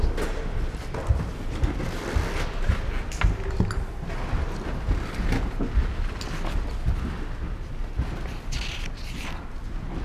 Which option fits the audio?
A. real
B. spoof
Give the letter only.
A